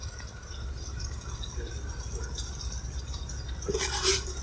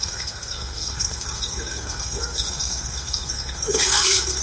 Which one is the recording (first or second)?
first